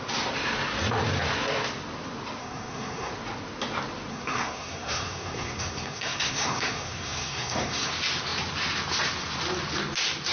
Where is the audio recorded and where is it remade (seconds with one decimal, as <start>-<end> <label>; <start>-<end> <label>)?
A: 0.0-2.4 recorded; 2.4-3.1 remade; 3.1-4.1 recorded; 4.1-7.9 remade; 7.9-10.3 recorded